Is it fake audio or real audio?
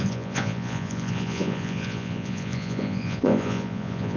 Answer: fake